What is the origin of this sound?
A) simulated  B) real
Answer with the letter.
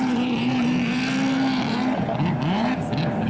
B